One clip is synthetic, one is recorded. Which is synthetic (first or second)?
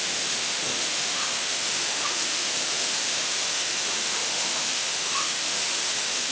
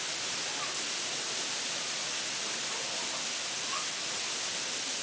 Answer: first